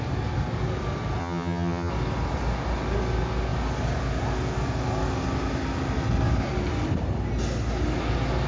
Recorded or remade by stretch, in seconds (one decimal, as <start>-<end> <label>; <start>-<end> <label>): 0.0-1.2 recorded; 1.2-1.9 remade; 1.9-8.5 recorded